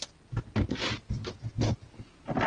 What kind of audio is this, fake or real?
real